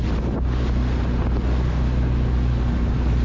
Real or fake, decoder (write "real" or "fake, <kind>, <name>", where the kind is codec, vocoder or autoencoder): real